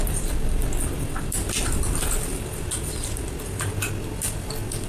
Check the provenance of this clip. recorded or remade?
recorded